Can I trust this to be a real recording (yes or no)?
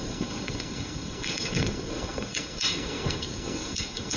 no